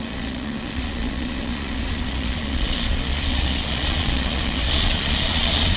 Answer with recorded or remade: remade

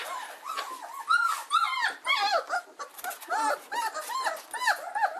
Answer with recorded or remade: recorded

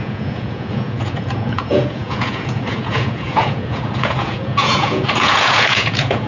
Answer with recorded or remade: remade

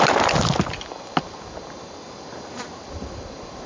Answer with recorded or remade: recorded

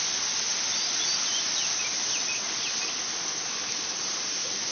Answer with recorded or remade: recorded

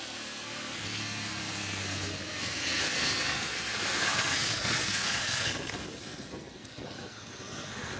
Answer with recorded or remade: remade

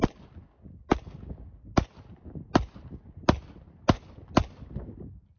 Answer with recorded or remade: recorded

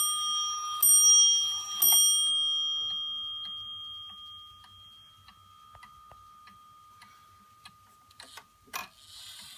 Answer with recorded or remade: recorded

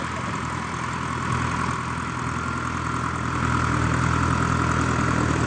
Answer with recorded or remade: recorded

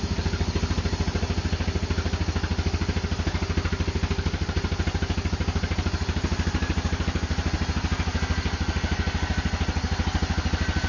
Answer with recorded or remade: recorded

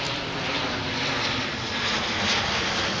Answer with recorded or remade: recorded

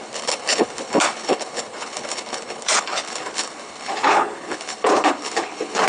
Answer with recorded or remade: remade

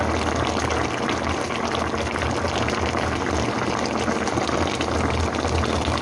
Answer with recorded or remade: recorded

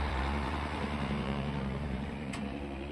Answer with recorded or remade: remade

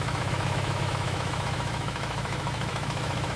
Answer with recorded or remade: remade